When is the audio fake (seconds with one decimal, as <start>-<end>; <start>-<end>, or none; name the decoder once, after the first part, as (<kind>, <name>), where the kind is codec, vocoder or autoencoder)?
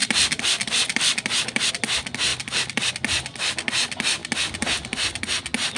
0.0-1.7 (vocoder, BigVGAN v2); 2.3-2.9